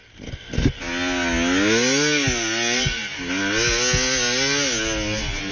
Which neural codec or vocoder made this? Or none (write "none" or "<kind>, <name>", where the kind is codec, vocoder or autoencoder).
none